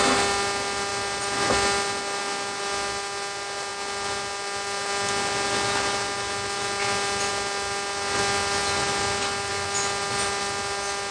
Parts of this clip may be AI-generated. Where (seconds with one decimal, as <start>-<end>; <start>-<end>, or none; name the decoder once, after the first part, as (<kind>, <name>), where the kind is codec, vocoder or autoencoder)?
none